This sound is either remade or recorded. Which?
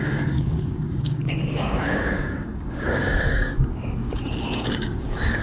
remade